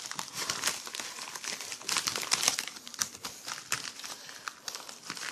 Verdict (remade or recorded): recorded